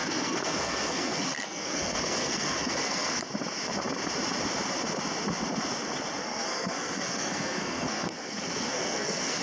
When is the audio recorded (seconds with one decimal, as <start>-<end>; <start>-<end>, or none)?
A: 3.2-6.2